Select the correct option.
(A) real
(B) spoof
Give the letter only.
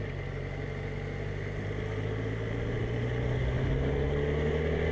A